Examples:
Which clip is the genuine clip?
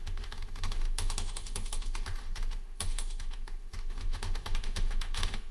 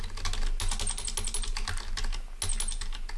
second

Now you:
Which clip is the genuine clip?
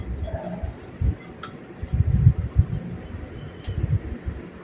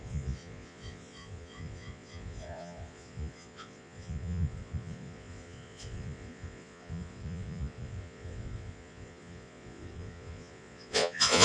first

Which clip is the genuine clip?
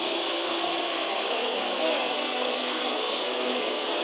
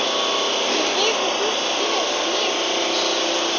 second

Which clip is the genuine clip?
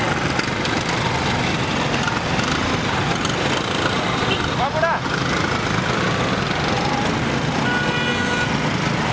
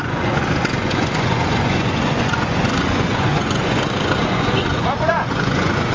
first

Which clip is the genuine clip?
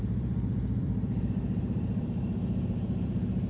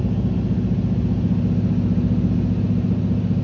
second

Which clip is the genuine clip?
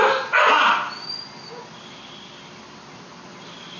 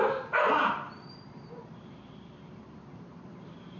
first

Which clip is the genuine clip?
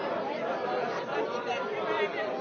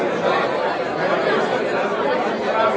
first